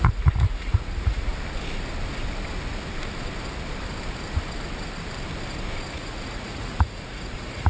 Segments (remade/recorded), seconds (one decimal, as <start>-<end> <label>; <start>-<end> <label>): 0.0-1.3 remade; 1.3-5.9 recorded; 5.9-7.7 remade